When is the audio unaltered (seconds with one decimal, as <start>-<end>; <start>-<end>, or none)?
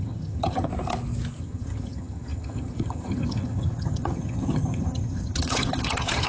0.7-1.4